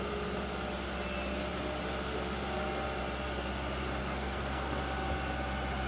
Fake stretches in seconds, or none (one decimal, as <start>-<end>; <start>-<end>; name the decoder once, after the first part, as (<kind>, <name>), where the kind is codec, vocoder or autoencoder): 4.0-4.8 (codec, SNAC)